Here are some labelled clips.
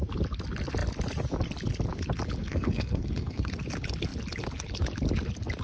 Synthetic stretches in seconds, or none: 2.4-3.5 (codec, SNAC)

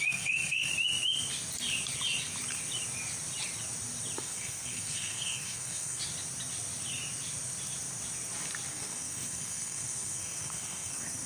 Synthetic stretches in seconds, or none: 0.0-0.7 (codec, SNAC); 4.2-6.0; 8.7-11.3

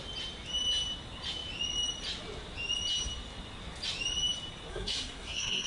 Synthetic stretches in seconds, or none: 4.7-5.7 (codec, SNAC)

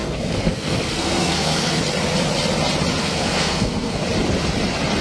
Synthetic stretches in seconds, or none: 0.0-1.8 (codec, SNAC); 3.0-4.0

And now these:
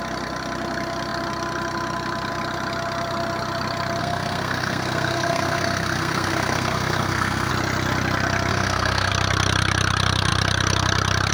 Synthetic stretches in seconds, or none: 4.0-7.5 (codec, SNAC); 8.5-9.1

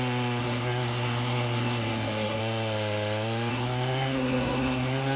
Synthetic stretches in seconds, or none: 0.4-2.4 (codec, SNAC); 3.5-5.2